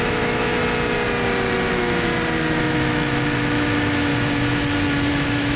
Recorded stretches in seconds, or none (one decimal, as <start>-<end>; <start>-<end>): 0.6-1.7; 2.1-2.6; 4.1-5.1